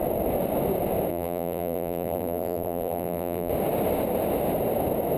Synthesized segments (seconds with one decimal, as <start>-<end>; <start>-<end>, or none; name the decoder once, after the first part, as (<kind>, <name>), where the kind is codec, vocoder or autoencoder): 1.1-3.5 (vocoder, BigVGAN v2)